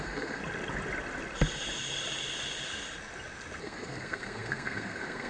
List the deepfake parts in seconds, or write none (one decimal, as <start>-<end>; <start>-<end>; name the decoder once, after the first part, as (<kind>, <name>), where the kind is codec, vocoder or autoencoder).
0.0-0.4 (codec, SNAC); 3.6-5.3